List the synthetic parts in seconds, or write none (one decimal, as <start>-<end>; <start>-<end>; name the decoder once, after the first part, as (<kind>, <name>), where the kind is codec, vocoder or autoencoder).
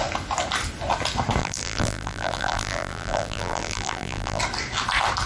1.4-4.4 (vocoder, BigVGAN v2)